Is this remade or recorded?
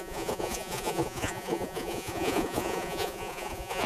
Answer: remade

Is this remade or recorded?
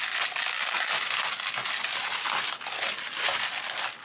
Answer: recorded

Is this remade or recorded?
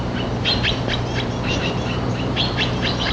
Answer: recorded